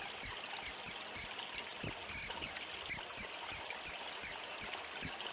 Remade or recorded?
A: recorded